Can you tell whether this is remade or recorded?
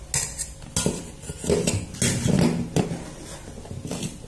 recorded